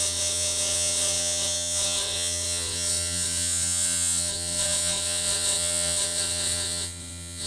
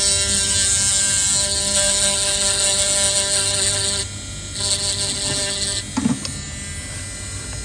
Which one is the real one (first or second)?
second